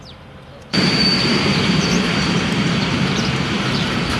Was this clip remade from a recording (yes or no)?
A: yes